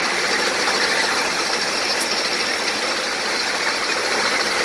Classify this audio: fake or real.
real